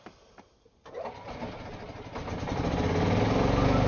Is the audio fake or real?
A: real